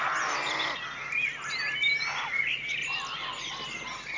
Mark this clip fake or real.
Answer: real